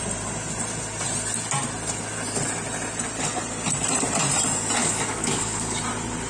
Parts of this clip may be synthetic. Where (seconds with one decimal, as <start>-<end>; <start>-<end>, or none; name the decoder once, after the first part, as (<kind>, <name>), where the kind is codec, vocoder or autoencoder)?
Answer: 4.8-5.8 (codec, DAC)